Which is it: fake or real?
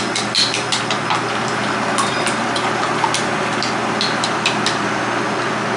real